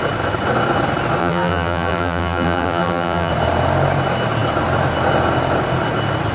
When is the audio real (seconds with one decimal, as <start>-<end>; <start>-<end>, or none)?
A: 0.0-1.2; 3.3-6.3